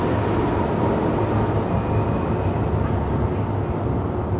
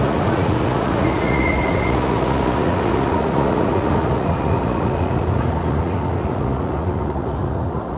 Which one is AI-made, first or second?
second